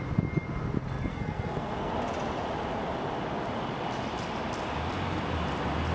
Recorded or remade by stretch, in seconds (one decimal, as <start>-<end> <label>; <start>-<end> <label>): 0.0-1.1 recorded; 1.1-1.9 remade; 1.9-5.9 recorded